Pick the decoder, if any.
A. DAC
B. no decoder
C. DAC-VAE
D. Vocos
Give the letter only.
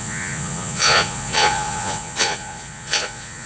D